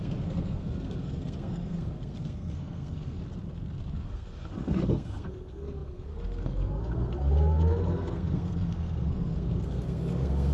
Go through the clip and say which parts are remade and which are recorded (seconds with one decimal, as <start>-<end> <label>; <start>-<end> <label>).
0.0-3.2 remade; 3.2-3.9 recorded; 3.9-10.5 remade